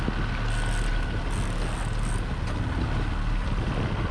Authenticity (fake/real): real